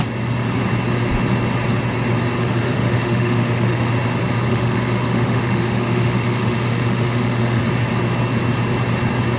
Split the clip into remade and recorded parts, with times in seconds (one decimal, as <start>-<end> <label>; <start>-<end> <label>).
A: 0.0-2.4 recorded; 2.4-3.9 remade; 3.9-4.5 recorded; 4.5-7.6 remade; 7.6-9.4 recorded